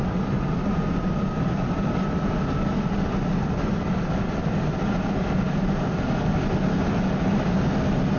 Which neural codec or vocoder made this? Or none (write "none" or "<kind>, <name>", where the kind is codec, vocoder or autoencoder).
none